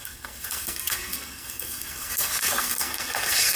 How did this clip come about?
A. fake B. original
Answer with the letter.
A